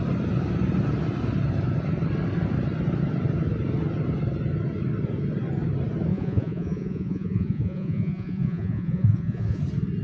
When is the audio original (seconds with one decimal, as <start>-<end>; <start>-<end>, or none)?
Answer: 0.0-6.1; 9.6-10.0